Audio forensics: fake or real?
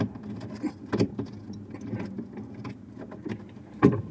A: real